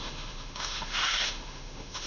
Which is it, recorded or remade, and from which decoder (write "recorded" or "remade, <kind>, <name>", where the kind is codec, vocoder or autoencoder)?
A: remade, autoencoder, DAC-VAE